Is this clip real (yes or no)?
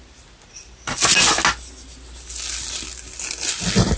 yes